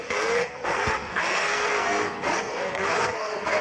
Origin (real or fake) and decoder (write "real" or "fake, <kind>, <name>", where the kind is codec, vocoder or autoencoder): fake, codec, SNAC